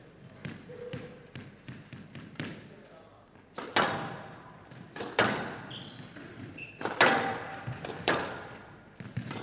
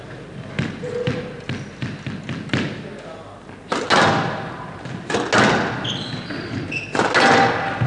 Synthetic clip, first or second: first